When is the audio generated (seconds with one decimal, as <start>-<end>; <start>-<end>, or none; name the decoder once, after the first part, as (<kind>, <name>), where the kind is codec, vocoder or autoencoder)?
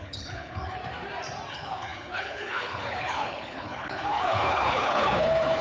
0.0-0.8 (codec, HILCodec); 1.5-5.6